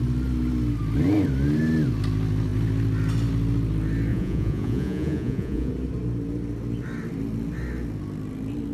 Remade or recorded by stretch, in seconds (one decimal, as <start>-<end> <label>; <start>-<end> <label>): 0.0-4.1 recorded; 4.1-5.7 remade; 5.7-8.7 recorded